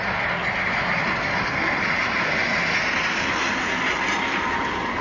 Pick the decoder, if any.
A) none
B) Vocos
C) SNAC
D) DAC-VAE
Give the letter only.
A